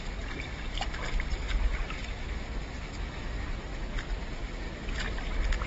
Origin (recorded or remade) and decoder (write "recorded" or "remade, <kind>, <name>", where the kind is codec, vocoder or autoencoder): recorded